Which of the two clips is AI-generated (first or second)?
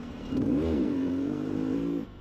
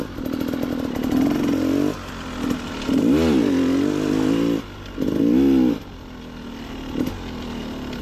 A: first